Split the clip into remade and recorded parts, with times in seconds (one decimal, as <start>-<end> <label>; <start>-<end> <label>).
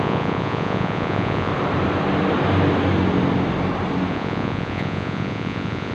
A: 0.0-1.5 remade; 1.5-4.1 recorded; 4.1-5.9 remade